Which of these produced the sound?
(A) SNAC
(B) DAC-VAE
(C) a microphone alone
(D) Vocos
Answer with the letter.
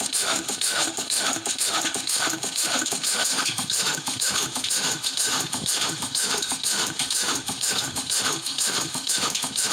B